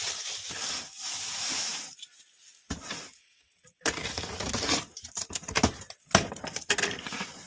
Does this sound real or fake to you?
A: fake